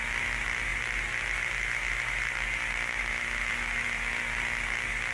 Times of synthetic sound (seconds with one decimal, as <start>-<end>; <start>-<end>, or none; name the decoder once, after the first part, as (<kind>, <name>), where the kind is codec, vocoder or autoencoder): none